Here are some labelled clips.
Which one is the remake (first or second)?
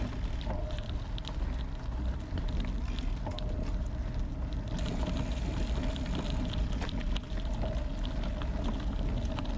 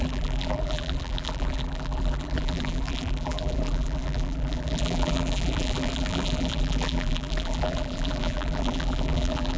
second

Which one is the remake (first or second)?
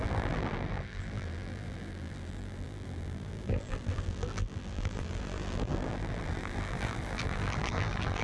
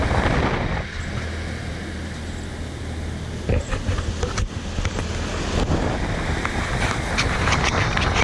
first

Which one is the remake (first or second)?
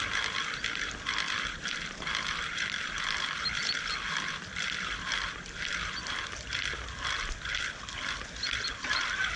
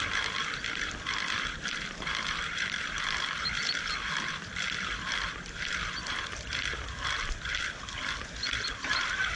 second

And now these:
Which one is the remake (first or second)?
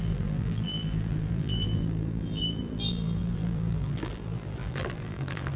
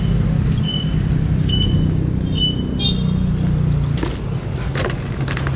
first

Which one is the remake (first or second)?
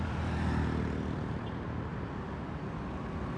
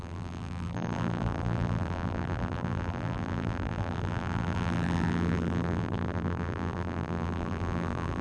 second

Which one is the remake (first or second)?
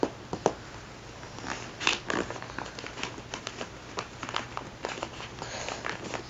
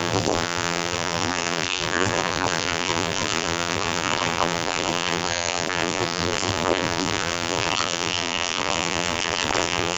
second